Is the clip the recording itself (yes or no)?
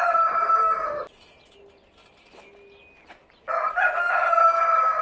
yes